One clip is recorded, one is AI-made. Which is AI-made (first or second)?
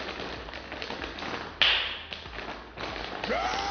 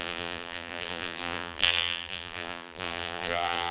second